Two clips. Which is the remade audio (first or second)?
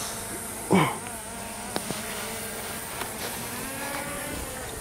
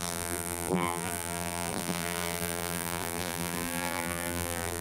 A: second